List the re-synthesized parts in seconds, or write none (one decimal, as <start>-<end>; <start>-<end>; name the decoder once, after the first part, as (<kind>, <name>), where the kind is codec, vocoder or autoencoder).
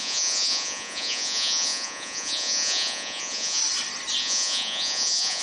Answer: 0.0-3.6 (vocoder, Vocos); 4.2-5.4